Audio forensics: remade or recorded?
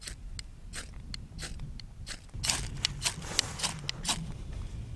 recorded